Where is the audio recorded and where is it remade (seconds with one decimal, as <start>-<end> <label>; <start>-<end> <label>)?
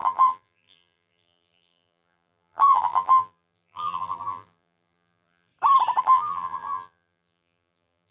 0.0-5.5 remade; 5.5-6.0 recorded; 6.0-8.1 remade